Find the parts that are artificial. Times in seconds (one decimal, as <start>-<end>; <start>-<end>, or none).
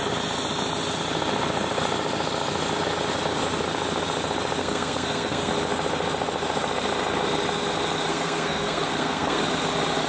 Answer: 4.6-5.5; 8.1-9.4